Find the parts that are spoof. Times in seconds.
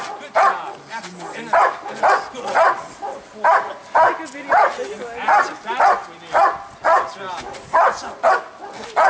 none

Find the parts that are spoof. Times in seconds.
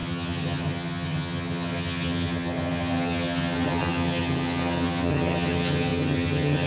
0.0-6.7 (vocoder, HiFi-GAN)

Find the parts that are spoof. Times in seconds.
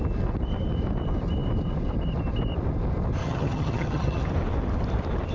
3.2-4.2 (vocoder, HiFi-GAN)